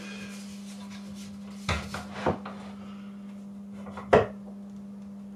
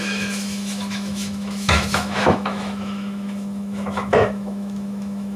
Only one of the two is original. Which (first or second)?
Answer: first